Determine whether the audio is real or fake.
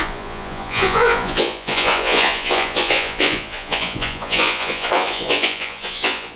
fake